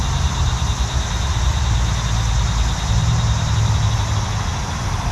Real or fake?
real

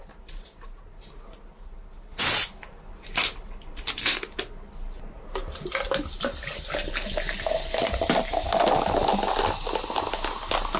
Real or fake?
real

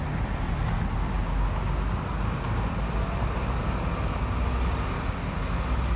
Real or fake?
real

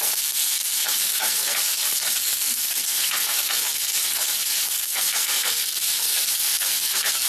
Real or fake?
fake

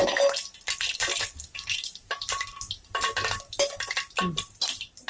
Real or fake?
real